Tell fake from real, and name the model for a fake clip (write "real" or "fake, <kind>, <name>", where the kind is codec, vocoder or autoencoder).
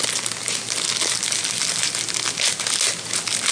real